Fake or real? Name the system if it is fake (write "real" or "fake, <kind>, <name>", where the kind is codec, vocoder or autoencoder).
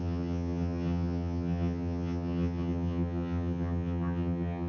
fake, vocoder, HiFi-GAN